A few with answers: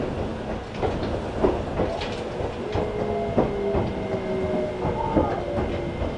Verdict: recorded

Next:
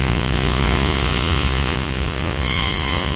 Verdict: remade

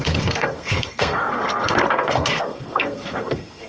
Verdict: remade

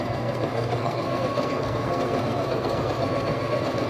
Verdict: remade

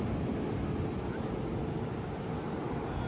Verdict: recorded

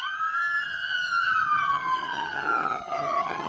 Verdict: remade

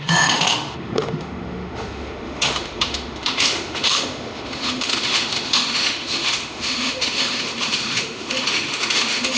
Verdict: remade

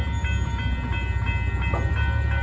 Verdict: recorded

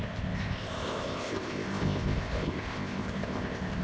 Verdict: remade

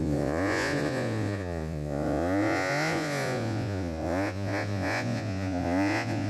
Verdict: remade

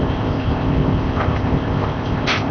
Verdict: remade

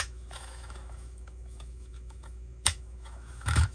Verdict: remade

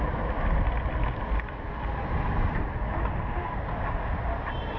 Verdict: recorded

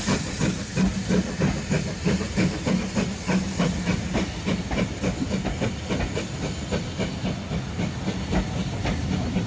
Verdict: recorded